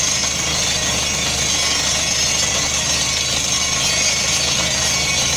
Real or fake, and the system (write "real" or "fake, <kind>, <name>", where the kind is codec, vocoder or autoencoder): real